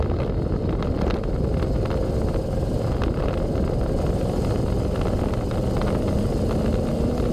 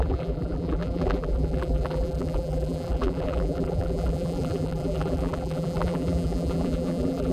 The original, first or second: first